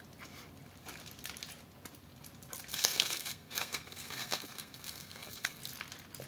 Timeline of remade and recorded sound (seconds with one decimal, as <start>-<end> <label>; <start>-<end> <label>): 0.0-2.7 recorded; 2.7-5.6 remade; 5.6-6.3 recorded